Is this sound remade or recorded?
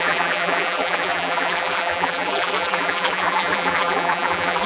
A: remade